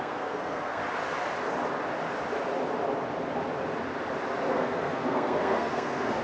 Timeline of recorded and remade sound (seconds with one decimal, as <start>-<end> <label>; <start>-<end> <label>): 0.0-0.8 remade; 0.8-4.5 recorded; 4.5-6.2 remade